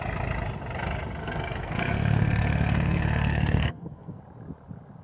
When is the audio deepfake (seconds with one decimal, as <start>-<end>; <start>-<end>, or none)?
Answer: 1.2-4.2